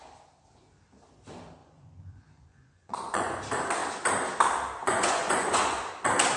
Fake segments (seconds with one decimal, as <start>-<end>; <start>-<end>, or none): 1.6-3.4; 4.8-5.8